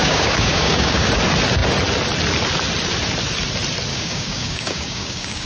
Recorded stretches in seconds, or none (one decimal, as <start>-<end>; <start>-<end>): 1.1-3.9